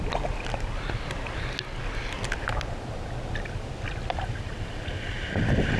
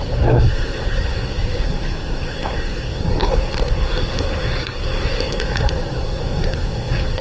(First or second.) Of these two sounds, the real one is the first